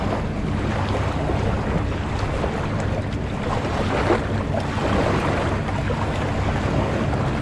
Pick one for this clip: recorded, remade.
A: recorded